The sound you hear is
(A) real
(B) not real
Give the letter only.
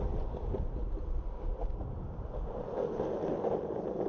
A